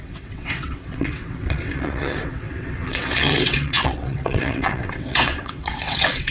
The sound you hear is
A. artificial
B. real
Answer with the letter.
A